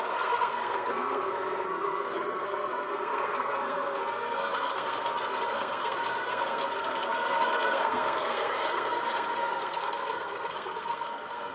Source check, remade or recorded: remade